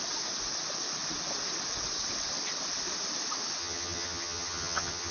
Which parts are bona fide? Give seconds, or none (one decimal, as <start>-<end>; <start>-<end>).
0.0-3.6